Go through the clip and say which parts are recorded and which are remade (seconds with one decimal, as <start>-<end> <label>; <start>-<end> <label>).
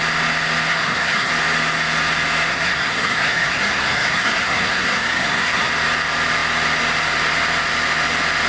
0.0-0.7 recorded; 0.7-1.3 remade; 1.3-2.5 recorded; 2.5-5.7 remade; 5.7-8.5 recorded